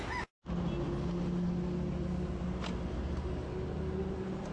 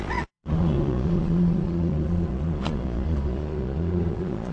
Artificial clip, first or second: second